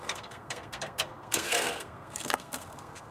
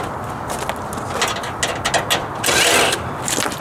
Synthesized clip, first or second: first